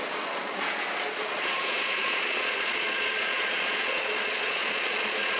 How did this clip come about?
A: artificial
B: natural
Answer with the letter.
A